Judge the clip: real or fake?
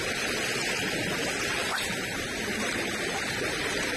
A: real